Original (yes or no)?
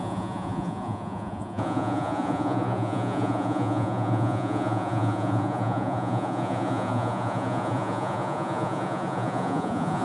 no